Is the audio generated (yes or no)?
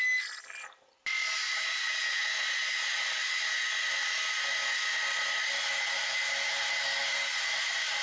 no